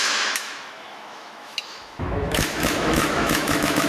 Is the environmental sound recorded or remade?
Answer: remade